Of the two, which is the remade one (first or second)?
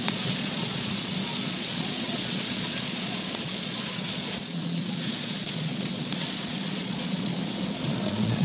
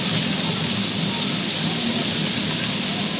first